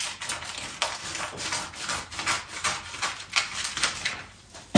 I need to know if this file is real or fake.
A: real